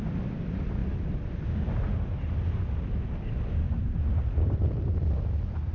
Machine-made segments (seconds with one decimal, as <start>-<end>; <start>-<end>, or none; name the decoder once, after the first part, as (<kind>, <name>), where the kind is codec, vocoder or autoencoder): 0.0-0.8 (vocoder, BigVGAN v2); 4.1-5.7